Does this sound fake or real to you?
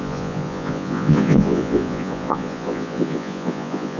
fake